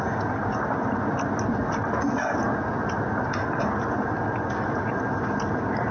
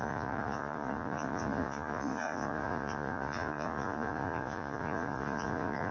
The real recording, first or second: first